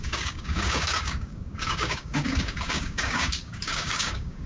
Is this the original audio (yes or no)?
no